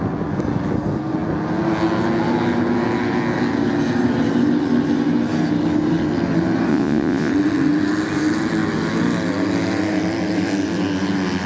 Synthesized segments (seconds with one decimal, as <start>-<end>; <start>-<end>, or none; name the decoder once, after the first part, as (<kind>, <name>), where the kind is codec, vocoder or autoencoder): 6.7-7.3 (vocoder, Vocos)